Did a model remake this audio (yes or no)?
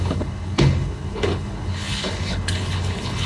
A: yes